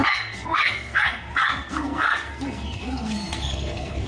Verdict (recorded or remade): remade